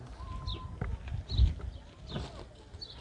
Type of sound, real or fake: real